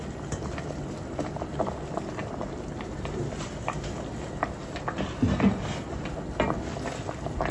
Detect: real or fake real